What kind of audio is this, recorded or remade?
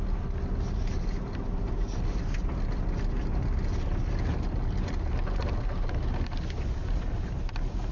recorded